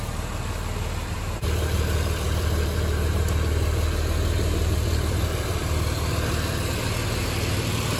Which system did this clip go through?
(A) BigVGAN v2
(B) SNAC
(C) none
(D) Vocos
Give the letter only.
A